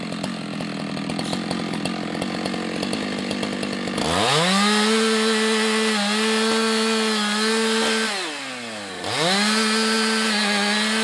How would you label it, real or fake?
real